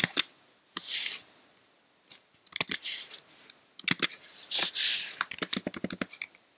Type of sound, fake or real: real